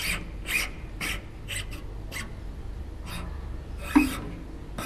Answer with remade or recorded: recorded